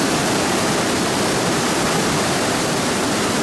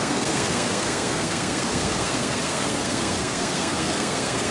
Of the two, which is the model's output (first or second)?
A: second